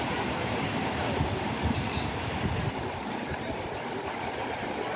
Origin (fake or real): fake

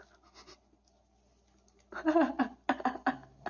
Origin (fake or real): real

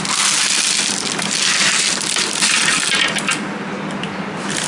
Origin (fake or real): real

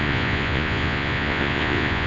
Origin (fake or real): fake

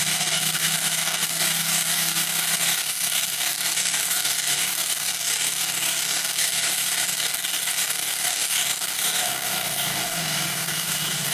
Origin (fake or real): fake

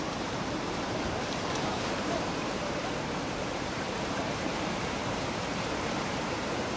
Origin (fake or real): fake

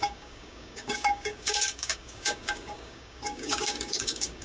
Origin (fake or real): fake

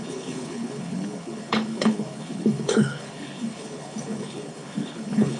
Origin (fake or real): fake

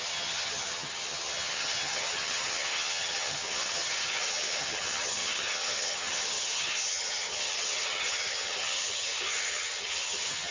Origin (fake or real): fake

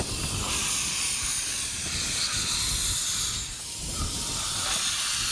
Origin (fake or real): fake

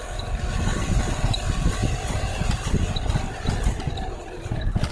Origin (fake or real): real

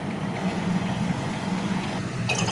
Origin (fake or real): fake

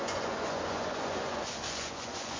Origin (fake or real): fake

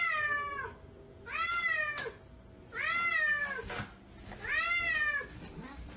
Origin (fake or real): real